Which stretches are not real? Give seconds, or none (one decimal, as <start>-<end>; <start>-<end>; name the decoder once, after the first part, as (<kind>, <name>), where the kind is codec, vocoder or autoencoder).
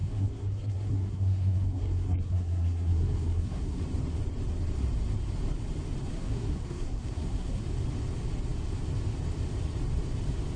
0.0-3.8 (codec, SNAC); 6.1-7.6